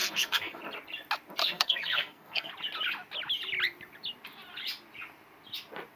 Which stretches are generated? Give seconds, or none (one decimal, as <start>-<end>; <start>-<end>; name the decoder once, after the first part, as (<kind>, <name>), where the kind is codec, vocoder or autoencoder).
0.0-0.6 (codec, SNAC); 1.4-2.5